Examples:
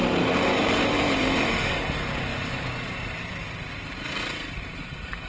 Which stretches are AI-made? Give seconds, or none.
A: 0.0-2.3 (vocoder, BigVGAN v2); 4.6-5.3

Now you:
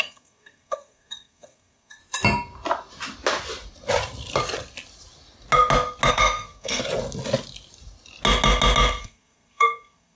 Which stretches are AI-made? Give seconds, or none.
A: 0.0-2.0 (codec, SNAC); 6.1-6.8; 9.0-10.2

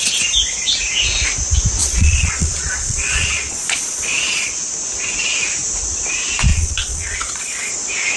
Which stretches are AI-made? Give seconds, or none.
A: 1.8-4.5 (vocoder, Vocos); 6.5-7.7

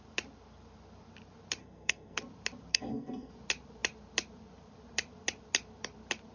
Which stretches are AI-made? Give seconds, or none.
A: 1.6-2.2 (codec, SNAC); 2.7-3.3